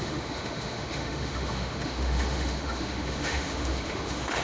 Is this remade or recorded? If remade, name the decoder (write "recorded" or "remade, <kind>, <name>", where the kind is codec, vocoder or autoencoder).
remade, autoencoder, DAC-VAE